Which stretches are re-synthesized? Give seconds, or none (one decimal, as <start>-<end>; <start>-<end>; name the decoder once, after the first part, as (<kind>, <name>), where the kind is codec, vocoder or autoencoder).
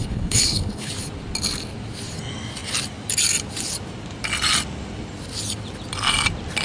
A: 0.0-0.9 (codec, HILCodec)